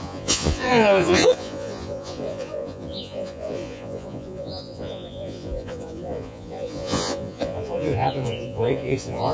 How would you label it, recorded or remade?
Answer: remade